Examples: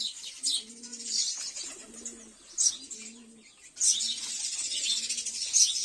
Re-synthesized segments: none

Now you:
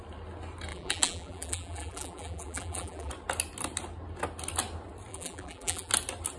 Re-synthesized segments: 0.7-3.1; 5.1-5.9

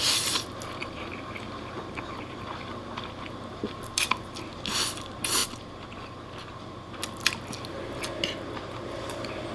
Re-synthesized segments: 0.8-4.4

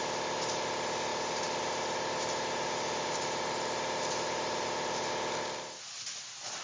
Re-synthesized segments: 1.1-5.1